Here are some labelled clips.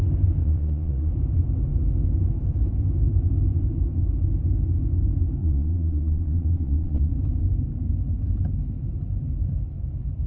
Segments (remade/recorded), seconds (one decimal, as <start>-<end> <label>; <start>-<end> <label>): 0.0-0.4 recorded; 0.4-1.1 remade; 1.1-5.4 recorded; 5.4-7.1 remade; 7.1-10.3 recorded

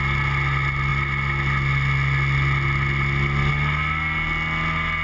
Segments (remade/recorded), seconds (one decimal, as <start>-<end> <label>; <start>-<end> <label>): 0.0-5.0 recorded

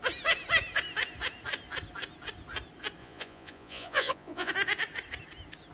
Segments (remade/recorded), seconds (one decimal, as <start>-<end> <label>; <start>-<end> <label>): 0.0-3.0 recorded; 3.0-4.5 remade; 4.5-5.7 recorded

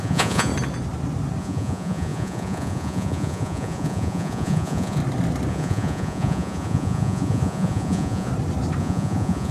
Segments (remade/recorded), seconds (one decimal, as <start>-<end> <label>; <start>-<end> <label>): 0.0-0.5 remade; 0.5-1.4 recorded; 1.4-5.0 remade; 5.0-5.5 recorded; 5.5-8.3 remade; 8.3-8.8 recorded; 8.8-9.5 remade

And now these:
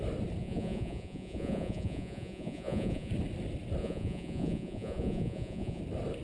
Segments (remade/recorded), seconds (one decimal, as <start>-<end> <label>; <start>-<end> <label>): 0.0-0.4 recorded; 0.4-3.1 remade; 3.1-3.8 recorded; 3.8-5.8 remade; 5.8-6.2 recorded